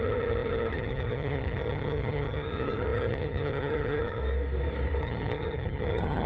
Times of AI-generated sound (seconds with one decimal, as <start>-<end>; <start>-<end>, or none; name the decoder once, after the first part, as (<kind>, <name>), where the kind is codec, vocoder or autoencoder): 0.0-4.2 (vocoder, HiFi-GAN); 5.0-6.3